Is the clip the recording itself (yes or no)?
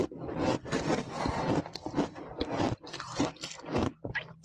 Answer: yes